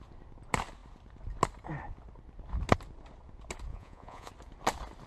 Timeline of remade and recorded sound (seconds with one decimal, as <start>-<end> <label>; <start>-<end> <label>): 0.0-3.7 recorded; 3.7-4.3 remade; 4.3-5.1 recorded